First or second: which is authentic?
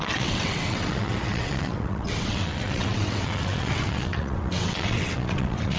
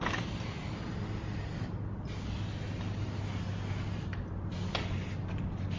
second